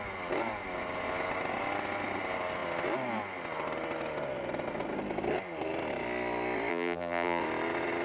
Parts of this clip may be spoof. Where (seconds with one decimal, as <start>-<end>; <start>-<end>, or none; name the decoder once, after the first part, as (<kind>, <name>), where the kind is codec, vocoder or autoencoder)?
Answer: 6.7-7.4 (vocoder, BigVGAN v2)